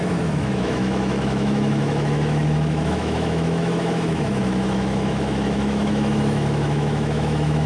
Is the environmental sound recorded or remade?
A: remade